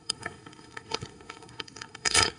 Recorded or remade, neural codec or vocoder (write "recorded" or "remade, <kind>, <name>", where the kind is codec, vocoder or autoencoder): remade, codec, SNAC